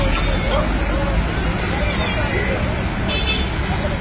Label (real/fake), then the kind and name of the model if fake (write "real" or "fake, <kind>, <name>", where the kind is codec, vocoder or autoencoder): real